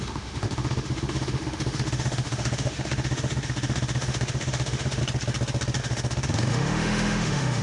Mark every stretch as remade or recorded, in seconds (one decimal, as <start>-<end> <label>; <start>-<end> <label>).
0.0-5.0 remade; 5.0-5.8 recorded; 5.8-7.6 remade